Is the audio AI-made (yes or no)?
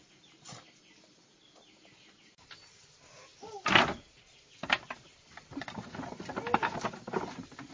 no